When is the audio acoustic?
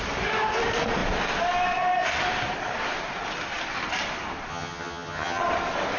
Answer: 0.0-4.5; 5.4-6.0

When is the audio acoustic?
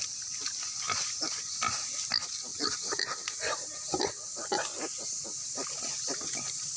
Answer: 0.0-6.8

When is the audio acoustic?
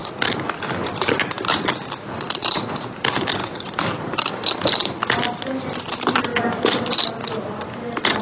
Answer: 0.0-8.2